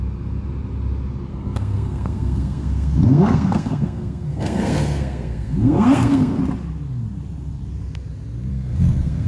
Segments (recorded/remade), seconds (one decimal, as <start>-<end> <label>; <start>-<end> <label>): 0.0-1.3 recorded; 1.3-6.4 remade; 6.4-8.5 recorded; 8.5-9.3 remade